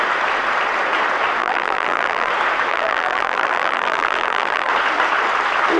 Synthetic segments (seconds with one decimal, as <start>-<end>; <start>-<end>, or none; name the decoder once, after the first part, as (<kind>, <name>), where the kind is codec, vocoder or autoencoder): 1.4-2.3 (vocoder, BigVGAN v2); 2.7-4.7